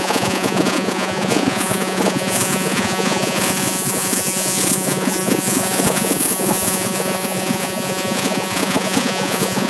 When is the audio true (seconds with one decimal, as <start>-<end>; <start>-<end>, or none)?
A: none